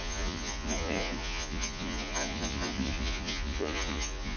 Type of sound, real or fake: fake